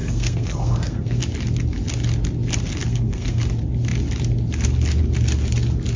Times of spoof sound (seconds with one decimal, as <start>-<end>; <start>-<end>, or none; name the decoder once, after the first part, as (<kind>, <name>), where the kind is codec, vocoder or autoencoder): 0.0-1.2 (codec, SNAC); 2.8-3.4